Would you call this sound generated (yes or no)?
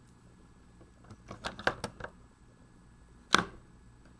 no